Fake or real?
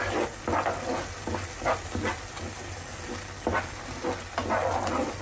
real